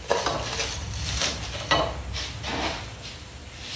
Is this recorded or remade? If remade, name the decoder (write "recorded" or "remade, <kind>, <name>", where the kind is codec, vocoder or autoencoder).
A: recorded